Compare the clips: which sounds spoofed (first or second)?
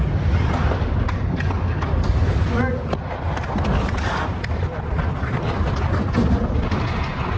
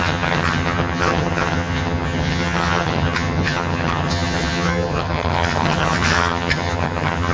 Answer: second